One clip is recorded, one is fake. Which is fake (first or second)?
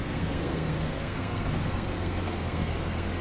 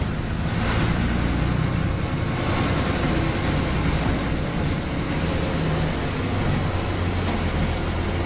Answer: first